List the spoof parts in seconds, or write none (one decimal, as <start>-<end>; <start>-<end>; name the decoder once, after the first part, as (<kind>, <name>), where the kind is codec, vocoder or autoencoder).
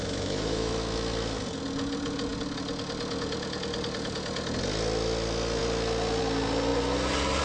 0.0-0.7 (autoencoder, DAC-VAE)